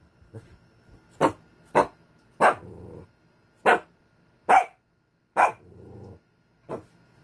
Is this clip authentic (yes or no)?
yes